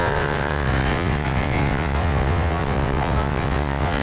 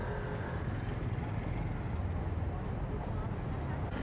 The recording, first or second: second